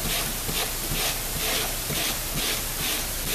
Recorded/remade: recorded